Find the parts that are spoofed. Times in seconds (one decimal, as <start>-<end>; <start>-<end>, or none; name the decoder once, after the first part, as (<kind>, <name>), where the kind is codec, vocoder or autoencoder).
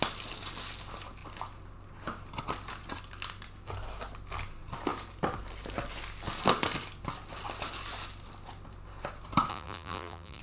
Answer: 9.5-10.4 (vocoder, BigVGAN v2)